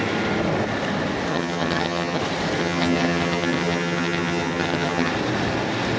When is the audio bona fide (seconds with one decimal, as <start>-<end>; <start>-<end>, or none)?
0.0-1.3; 2.2-2.6; 5.1-6.0